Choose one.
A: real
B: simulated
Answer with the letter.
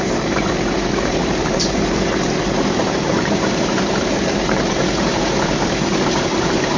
B